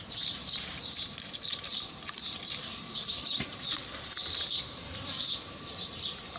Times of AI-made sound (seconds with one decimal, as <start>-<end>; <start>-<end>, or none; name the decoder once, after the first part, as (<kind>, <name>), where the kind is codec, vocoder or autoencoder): 0.0-3.8 (vocoder, BigVGAN v2); 5.1-6.4